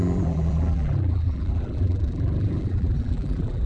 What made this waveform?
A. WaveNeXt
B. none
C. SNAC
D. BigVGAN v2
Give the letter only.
D